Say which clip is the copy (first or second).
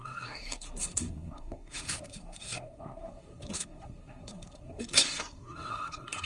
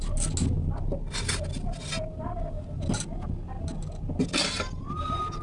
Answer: first